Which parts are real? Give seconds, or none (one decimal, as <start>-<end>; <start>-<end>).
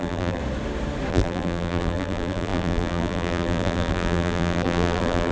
0.4-1.1